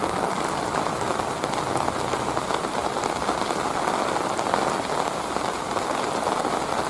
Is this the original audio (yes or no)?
yes